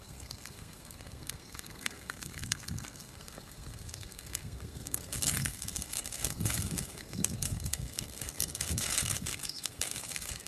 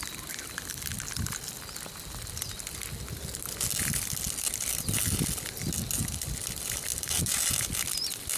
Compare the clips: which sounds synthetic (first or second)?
first